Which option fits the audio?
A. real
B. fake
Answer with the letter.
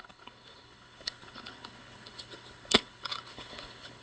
B